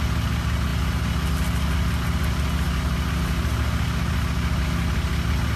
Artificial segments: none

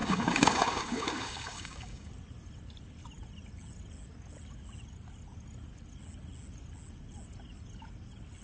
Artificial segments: 0.0-2.1 (codec, DAC)

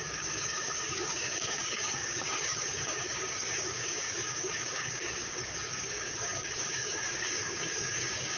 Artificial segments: 0.0-8.4 (codec, DAC)

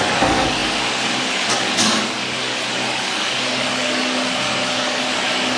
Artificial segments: 0.0-5.6 (codec, DAC)